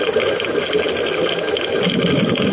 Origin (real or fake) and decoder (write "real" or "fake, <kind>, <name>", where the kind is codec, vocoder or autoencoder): real